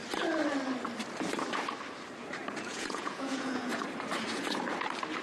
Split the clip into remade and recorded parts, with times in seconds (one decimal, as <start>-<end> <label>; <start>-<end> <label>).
0.0-2.7 recorded; 2.7-3.7 remade; 3.7-5.2 recorded